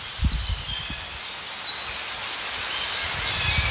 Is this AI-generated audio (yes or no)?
no